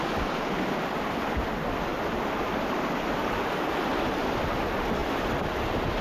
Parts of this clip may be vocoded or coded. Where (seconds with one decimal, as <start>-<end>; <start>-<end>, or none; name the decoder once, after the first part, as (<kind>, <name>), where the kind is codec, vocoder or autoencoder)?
none